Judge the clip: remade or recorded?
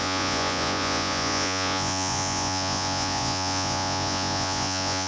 remade